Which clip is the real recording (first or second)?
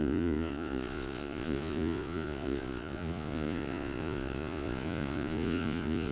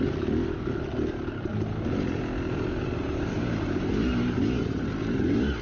second